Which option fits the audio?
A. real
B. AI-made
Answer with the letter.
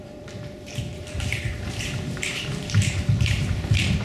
B